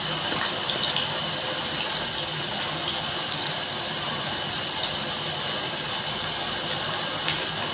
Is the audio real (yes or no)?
yes